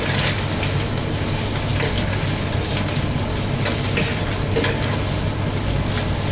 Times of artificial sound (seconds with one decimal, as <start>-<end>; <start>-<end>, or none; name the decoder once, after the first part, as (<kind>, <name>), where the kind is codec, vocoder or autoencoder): none